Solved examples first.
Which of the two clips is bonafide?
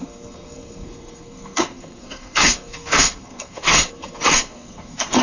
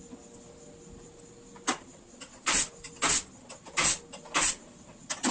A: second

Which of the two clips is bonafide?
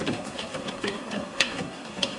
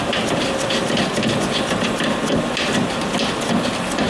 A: second